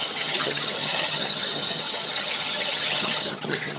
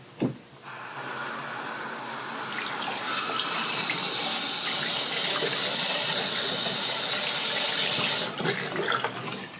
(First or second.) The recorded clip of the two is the second